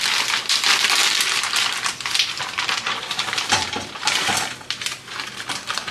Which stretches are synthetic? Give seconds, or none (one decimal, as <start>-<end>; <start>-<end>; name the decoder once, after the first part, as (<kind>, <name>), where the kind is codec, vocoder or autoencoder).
1.0-4.5 (vocoder, BigVGAN v2)